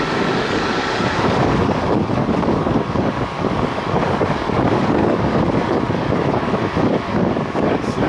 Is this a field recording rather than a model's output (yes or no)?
no